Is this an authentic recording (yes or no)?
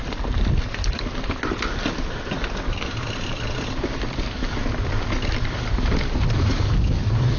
yes